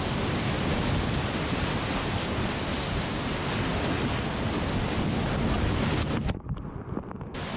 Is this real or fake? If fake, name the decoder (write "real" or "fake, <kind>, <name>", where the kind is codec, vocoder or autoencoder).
real